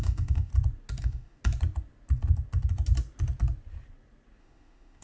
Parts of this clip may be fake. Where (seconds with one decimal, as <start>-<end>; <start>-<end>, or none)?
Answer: 0.0-0.5; 1.0-1.4; 4.4-5.0